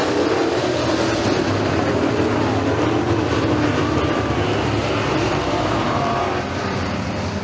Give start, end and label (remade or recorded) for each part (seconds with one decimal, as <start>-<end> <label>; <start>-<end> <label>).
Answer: 0.0-4.8 recorded; 4.8-6.2 remade; 6.2-7.4 recorded